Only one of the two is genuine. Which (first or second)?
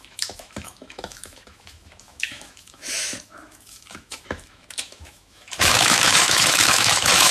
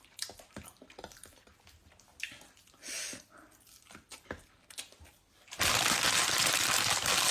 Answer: second